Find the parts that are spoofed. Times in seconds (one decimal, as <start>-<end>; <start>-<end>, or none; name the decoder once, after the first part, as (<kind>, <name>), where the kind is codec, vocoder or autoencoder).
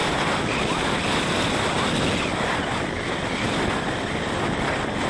none